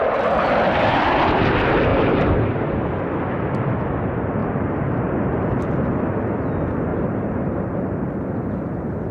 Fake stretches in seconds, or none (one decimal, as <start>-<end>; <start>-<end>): 1.9-2.7; 4.4-5.6; 6.9-7.6